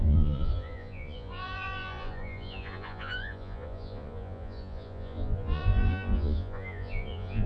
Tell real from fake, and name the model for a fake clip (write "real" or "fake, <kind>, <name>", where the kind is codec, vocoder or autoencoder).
fake, vocoder, Vocos